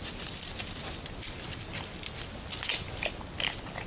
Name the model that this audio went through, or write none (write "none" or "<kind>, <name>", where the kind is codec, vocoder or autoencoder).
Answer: none